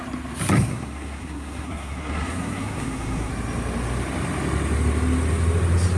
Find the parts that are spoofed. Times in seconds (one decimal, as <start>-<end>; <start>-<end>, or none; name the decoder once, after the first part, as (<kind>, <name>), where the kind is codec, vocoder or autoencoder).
0.7-3.3 (codec, SNAC)